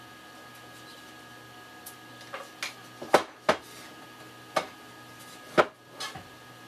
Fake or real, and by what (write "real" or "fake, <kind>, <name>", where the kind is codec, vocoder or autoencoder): real